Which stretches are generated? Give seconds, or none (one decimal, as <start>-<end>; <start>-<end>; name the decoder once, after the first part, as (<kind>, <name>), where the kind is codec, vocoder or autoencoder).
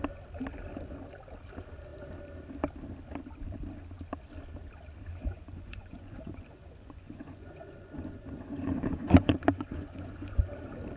5.2-10.4 (vocoder, Vocos)